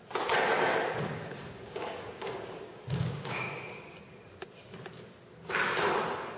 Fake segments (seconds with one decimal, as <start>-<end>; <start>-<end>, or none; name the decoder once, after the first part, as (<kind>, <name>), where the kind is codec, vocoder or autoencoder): 0.7-4.2 (codec, DAC)